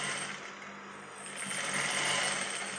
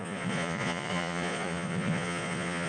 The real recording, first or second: first